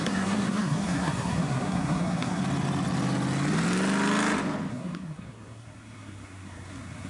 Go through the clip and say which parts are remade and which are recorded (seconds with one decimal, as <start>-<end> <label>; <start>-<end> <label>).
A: 0.0-2.4 remade; 2.4-4.7 recorded; 4.7-7.1 remade